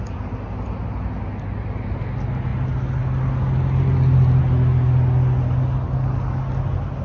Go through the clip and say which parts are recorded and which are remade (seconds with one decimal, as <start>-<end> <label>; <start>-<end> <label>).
0.0-7.0 recorded